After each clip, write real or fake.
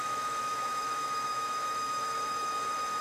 fake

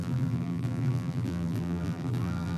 fake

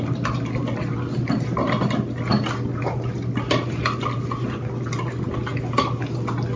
real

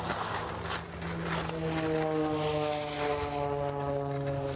real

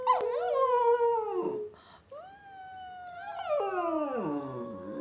real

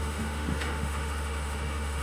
fake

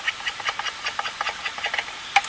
real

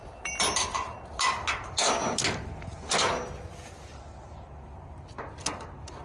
real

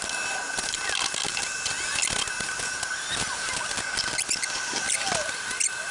real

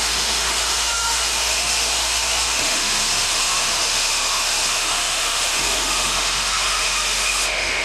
fake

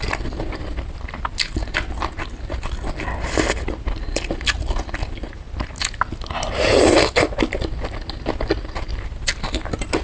real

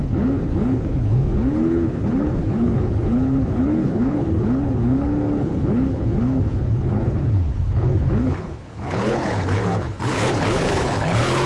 fake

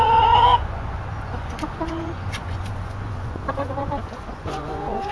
fake